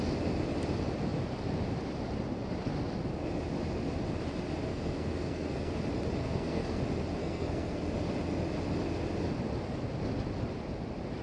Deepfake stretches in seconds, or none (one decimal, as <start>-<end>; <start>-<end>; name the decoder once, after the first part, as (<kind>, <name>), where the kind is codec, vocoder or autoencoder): 4.7-5.7 (codec, SNAC); 6.2-6.8; 7.2-7.8